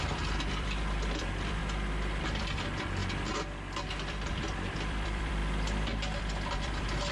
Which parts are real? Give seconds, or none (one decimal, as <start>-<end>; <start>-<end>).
1.6-2.2; 3.0-4.0; 5.4-6.2